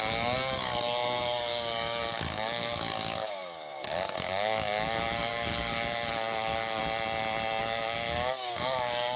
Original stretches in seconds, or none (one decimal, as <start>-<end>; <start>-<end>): 6.8-7.6